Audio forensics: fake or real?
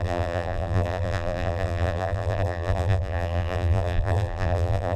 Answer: fake